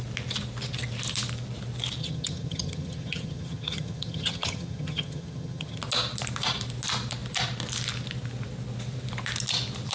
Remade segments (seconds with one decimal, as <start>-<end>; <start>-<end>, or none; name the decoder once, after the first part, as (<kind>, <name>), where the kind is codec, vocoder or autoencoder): 2.0-5.8 (vocoder, HiFi-GAN)